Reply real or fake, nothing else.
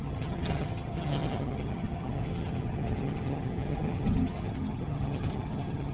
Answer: fake